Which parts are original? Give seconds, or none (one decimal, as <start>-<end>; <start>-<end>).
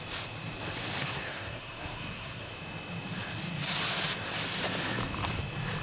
0.0-1.0; 2.5-5.8